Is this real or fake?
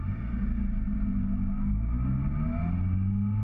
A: real